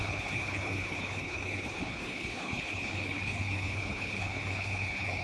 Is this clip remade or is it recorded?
remade